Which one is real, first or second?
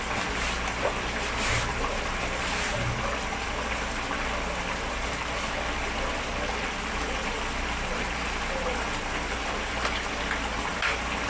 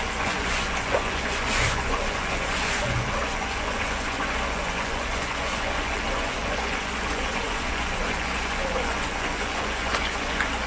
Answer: first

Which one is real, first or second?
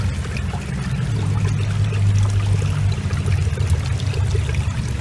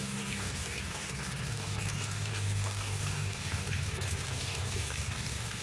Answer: first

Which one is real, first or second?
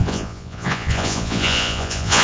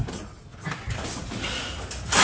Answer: second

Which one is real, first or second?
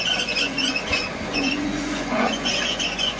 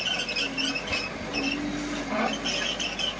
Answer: second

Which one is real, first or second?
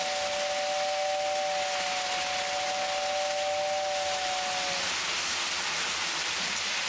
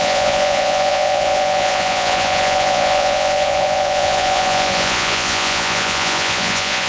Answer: first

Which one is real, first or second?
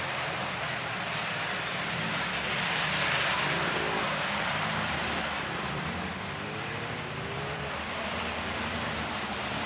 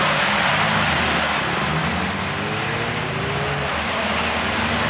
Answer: second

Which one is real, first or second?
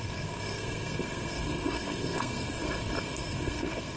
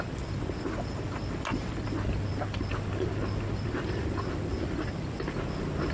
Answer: second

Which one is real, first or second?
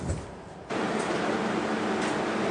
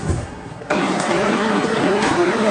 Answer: first